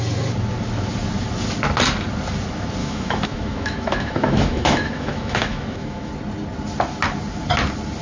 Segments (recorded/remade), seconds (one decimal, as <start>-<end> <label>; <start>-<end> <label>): 0.0-2.8 recorded; 2.8-6.1 remade; 6.1-8.0 recorded